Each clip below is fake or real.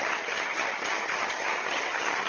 fake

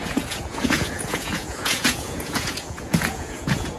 fake